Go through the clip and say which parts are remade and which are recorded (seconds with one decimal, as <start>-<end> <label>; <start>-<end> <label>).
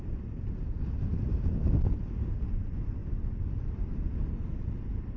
0.0-5.2 recorded